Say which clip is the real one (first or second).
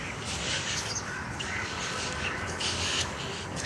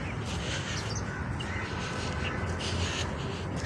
second